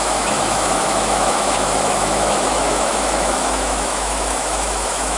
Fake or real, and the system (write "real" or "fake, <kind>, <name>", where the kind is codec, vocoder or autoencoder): fake, autoencoder, DAC-VAE